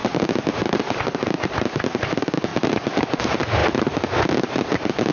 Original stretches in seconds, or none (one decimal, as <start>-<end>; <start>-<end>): 0.0-2.5; 3.2-5.1